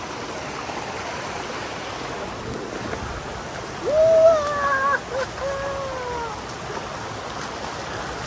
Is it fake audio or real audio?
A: real